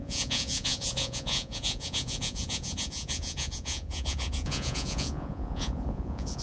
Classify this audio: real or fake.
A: fake